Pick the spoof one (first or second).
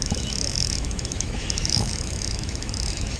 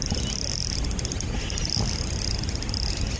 first